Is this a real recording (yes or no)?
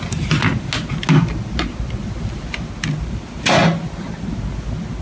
yes